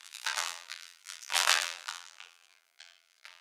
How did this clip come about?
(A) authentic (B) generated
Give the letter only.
B